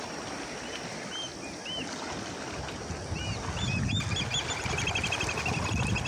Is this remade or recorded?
recorded